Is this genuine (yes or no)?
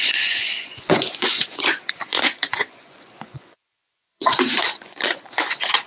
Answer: no